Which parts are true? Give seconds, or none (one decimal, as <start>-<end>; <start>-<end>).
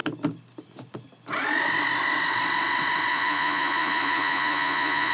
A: 0.0-3.1